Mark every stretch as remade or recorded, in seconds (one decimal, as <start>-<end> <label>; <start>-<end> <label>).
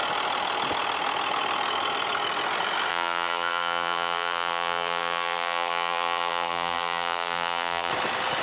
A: 0.0-2.9 recorded; 2.9-7.9 remade; 7.9-8.4 recorded